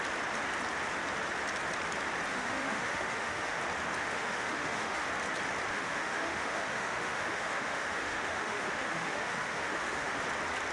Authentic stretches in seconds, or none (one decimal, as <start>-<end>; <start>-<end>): 0.0-2.3; 3.6-4.0; 5.1-5.7; 10.2-10.7